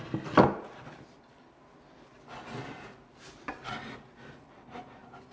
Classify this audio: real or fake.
real